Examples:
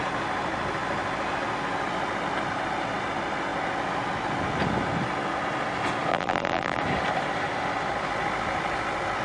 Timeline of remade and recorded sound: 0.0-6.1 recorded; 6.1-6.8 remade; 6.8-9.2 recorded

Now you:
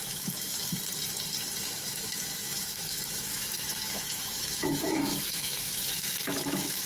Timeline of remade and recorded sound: 0.0-0.7 remade; 0.7-1.6 recorded; 1.6-6.9 remade

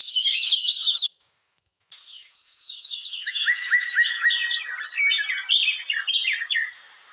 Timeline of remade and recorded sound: 0.0-4.3 remade; 4.3-7.1 recorded

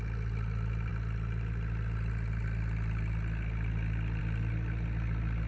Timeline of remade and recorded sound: 0.0-5.5 recorded

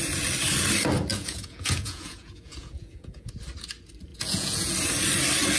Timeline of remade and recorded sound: 0.0-1.1 recorded; 1.1-3.3 remade; 3.3-4.1 recorded; 4.1-4.7 remade; 4.7-5.6 recorded

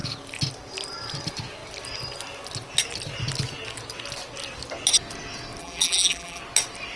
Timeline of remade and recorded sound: 0.0-5.6 recorded; 5.6-6.4 remade; 6.4-7.0 recorded